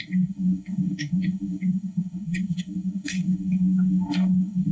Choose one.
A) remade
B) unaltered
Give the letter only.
A